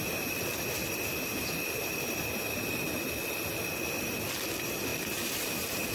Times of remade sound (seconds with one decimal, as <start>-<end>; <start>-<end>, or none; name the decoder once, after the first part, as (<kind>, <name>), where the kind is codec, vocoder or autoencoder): none